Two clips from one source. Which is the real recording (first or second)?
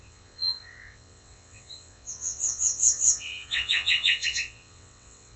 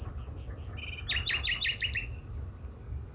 second